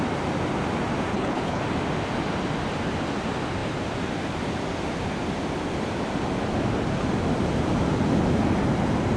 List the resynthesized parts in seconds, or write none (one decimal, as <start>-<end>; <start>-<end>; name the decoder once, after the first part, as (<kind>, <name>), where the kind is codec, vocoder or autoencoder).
1.1-1.6 (codec, HILCodec)